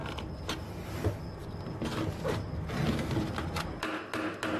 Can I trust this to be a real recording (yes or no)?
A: yes